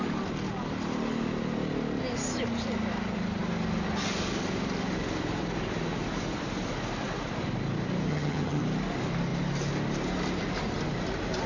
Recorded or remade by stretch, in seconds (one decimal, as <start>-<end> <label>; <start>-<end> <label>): 0.0-8.1 recorded; 8.1-8.6 remade; 8.6-11.5 recorded